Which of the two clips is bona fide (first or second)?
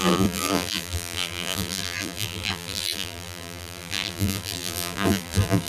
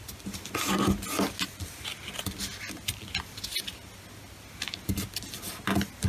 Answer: second